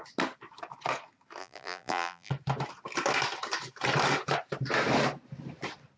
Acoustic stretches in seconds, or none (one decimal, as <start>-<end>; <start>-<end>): 0.0-1.4; 2.3-6.0